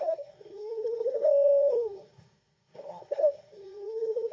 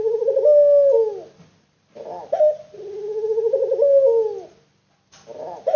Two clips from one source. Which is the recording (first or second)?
second